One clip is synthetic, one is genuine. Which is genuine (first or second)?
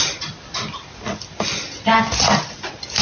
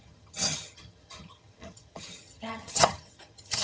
first